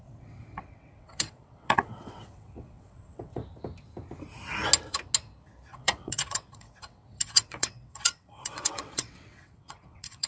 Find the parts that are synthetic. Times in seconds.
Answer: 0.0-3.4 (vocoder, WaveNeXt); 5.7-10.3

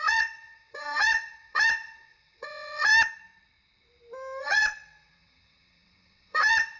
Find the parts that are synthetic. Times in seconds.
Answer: 0.0-2.9 (vocoder, WaveNeXt); 4.4-6.8